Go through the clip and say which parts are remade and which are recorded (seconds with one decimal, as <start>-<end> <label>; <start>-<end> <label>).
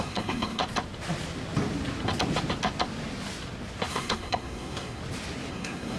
0.0-0.6 remade; 0.6-3.9 recorded; 3.9-5.0 remade; 5.0-5.5 recorded; 5.5-6.0 remade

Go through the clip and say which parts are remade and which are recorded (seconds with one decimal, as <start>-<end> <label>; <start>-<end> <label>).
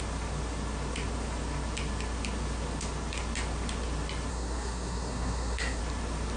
0.0-4.3 recorded; 4.3-5.8 remade; 5.8-6.4 recorded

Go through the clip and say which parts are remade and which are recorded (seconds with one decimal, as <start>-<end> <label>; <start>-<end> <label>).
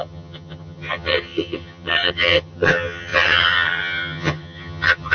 0.0-5.1 remade